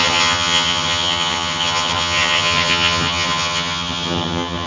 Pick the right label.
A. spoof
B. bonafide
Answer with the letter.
A